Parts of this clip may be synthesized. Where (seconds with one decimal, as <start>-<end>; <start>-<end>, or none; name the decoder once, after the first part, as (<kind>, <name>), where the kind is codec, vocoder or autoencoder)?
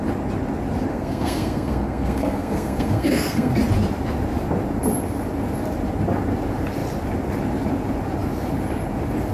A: 0.9-3.5 (codec, SNAC)